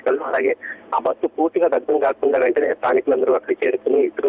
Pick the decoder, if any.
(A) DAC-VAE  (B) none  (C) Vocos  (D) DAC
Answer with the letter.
C